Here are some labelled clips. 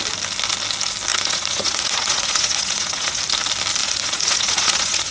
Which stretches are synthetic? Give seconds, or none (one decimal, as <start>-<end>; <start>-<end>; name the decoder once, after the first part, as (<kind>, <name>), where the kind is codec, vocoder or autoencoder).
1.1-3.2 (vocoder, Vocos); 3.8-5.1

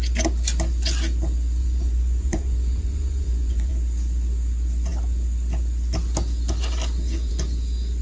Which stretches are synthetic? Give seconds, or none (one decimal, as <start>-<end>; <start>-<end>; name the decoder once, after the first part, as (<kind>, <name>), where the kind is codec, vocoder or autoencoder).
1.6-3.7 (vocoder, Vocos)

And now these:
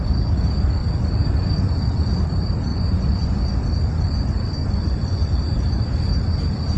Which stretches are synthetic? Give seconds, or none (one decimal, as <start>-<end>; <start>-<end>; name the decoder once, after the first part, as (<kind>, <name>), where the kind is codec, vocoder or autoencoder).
2.7-3.4 (vocoder, Vocos); 4.6-5.3